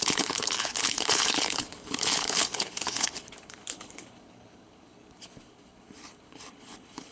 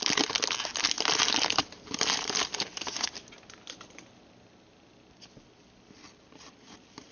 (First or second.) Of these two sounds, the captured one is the second